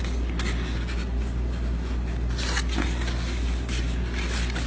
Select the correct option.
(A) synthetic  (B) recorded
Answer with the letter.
B